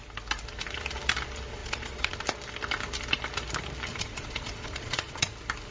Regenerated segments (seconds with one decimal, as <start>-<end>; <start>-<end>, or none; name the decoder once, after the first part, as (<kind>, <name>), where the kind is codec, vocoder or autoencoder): 1.6-2.1 (vocoder, Vocos); 3.9-5.3